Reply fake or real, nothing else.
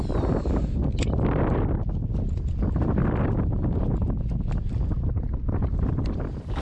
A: real